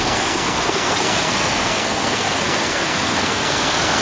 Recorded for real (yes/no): no